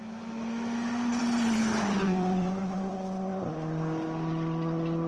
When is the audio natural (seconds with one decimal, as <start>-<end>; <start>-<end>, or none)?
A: 0.0-1.2; 3.5-5.1